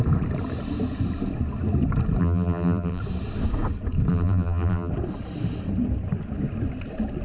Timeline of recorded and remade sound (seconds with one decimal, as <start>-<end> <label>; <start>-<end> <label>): 0.0-2.2 recorded; 2.2-3.0 remade; 3.0-4.1 recorded; 4.1-4.9 remade; 4.9-7.2 recorded